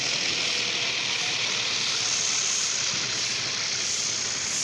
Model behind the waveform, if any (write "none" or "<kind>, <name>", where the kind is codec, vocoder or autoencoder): none